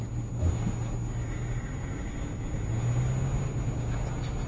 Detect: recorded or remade recorded